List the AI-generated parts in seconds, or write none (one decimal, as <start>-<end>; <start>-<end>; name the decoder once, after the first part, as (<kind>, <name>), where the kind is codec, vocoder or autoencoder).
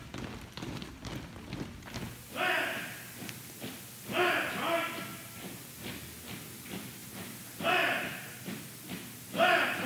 none